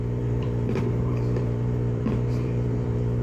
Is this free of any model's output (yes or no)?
no